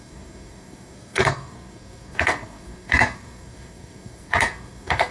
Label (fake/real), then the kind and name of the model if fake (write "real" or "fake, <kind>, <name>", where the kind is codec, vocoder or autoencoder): fake, codec, SNAC